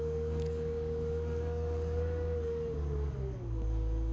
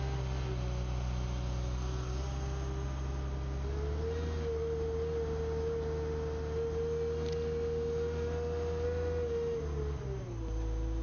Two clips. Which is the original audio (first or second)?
second